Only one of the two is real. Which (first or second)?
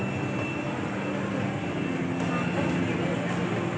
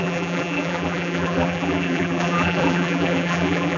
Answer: first